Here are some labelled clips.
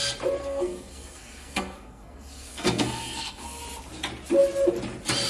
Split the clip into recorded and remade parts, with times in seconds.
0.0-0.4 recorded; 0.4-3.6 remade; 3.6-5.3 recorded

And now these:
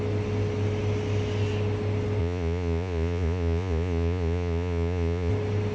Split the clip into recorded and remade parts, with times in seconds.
0.0-2.2 recorded; 2.2-5.3 remade; 5.3-5.7 recorded

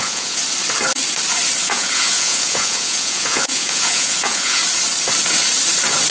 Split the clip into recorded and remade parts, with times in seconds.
0.0-0.4 remade; 0.4-1.6 recorded; 1.6-4.6 remade; 4.6-6.1 recorded

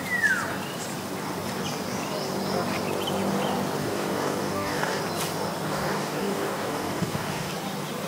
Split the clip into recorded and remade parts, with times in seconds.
0.0-3.8 recorded; 3.8-5.0 remade; 5.0-5.7 recorded; 5.7-7.5 remade; 7.5-8.1 recorded

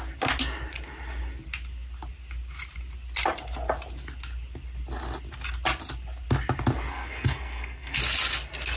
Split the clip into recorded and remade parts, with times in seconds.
0.0-6.9 recorded; 6.9-8.0 remade; 8.0-8.8 recorded

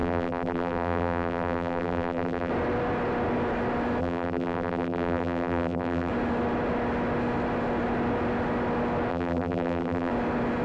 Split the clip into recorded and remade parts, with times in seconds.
0.0-2.5 remade; 2.5-4.0 recorded; 4.0-6.1 remade; 6.1-9.1 recorded; 9.1-10.1 remade; 10.1-10.6 recorded

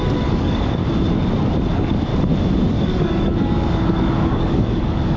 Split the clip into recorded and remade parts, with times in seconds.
0.0-0.8 remade; 0.8-1.7 recorded; 1.7-2.1 remade; 2.1-2.7 recorded; 2.7-5.2 remade